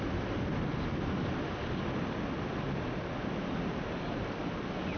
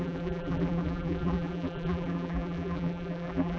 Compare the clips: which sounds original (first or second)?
first